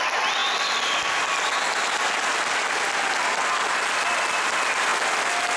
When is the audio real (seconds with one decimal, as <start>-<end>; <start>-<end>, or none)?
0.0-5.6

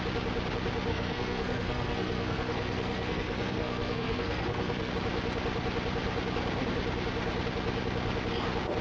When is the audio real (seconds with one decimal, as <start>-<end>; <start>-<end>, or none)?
0.0-0.9; 4.9-8.8

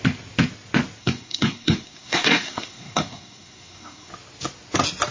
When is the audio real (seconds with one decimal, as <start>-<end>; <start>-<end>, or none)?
0.0-1.0; 4.1-5.1

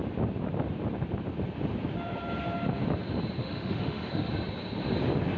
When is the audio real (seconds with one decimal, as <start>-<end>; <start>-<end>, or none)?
0.0-3.4; 4.3-5.4